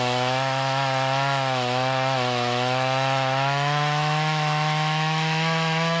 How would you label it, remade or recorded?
remade